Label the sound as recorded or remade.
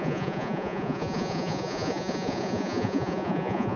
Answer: remade